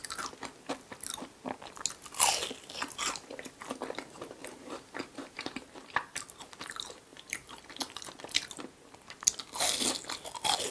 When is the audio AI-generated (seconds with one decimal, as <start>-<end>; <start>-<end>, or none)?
4.4-5.7; 7.1-7.6